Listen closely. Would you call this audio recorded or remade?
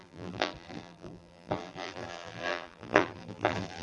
remade